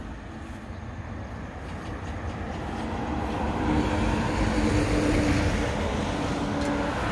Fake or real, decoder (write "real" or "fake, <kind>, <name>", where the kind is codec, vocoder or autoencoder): real